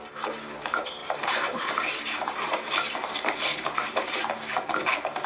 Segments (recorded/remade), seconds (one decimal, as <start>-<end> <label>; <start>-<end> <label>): 0.0-1.0 recorded; 1.0-4.2 remade; 4.2-5.3 recorded